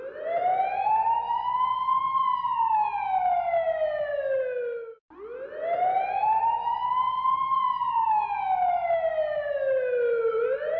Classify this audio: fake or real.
real